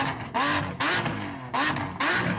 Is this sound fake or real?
real